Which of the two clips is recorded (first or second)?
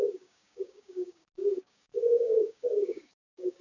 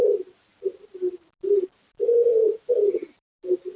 second